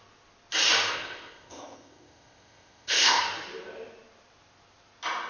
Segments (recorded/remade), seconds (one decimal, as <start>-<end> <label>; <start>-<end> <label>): 0.0-0.9 recorded; 0.9-3.2 remade; 3.2-5.3 recorded